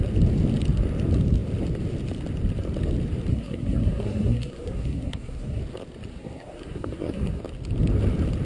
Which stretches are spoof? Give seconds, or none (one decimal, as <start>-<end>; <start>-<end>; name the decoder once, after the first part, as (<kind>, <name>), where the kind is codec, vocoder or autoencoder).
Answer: 3.3-5.6 (codec, SNAC); 6.1-7.4